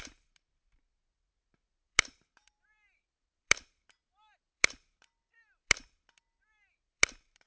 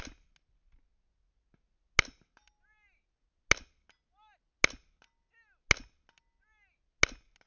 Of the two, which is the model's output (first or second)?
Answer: first